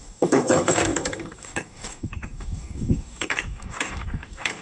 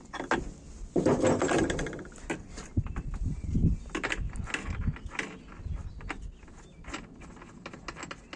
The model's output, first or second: first